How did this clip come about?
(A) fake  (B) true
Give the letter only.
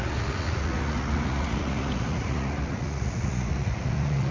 A